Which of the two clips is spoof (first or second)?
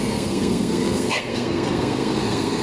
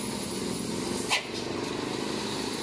first